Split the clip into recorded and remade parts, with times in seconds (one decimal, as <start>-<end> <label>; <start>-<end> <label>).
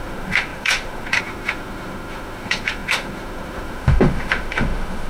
0.0-5.1 remade